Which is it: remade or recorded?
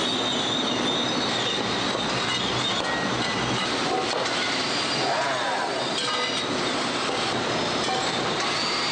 recorded